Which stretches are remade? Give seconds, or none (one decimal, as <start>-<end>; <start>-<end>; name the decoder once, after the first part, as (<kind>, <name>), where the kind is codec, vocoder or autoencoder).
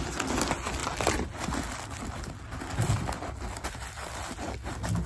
none